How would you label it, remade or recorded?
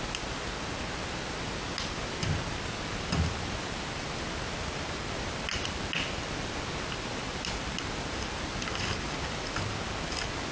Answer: recorded